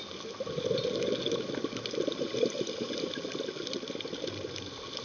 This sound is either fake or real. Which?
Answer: real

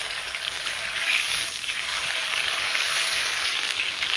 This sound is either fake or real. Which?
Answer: fake